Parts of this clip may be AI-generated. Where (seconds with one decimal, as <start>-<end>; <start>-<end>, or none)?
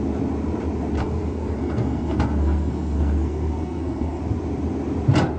1.0-4.2